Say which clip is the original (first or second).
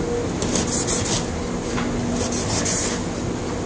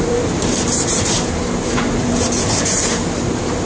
first